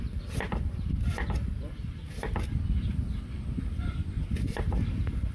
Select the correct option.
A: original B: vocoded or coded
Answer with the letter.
B